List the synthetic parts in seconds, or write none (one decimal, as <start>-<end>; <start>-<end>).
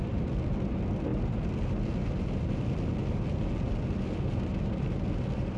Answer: none